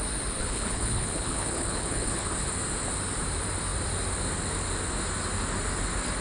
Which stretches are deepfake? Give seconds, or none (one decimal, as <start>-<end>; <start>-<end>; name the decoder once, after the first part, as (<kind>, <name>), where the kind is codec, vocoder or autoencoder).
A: 0.4-2.5 (codec, HILCodec)